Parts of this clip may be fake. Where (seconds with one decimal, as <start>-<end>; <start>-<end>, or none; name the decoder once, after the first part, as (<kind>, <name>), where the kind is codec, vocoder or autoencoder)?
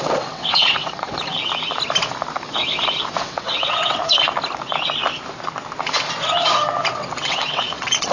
0.0-1.3 (vocoder, WaveNeXt); 3.2-4.0; 6.9-8.1